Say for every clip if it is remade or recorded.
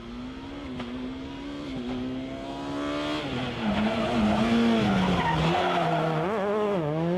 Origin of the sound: recorded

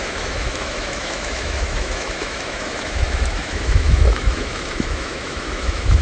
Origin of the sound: remade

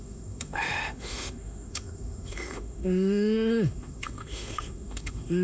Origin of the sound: remade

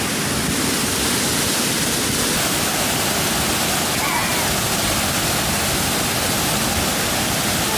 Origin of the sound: recorded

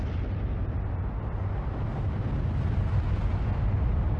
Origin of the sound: recorded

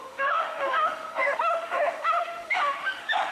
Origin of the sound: remade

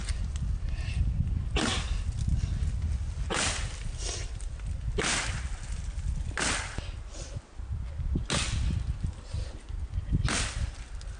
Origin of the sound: recorded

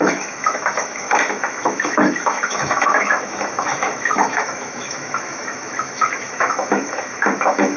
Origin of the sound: remade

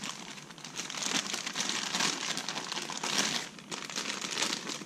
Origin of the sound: recorded